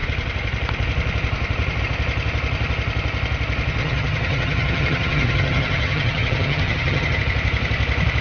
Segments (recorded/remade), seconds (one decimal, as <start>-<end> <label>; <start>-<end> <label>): 0.0-3.8 recorded; 3.8-7.2 remade; 7.2-8.2 recorded